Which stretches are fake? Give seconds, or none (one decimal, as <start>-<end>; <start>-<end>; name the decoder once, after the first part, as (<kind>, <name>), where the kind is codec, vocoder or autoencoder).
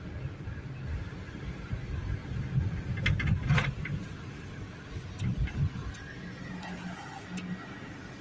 2.2-6.5 (vocoder, BigVGAN v2)